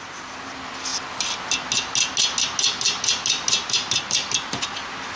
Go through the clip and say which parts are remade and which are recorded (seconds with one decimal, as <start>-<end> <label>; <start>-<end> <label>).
0.0-5.2 recorded